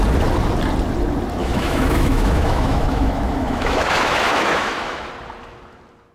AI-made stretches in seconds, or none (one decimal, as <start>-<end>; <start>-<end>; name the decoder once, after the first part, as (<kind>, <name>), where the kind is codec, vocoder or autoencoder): 1.4-5.1 (autoencoder, DAC-VAE)